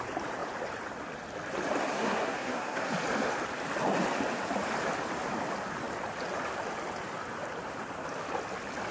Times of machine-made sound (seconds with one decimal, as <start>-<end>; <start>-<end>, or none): 1.9-2.9